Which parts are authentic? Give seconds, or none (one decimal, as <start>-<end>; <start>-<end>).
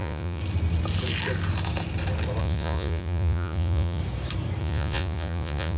0.4-2.4; 4.0-4.6